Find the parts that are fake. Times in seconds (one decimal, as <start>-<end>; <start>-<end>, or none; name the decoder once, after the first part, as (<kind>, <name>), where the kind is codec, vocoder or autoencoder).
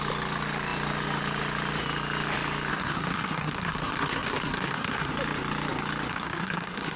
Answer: 2.7-5.1 (codec, SNAC); 6.1-7.0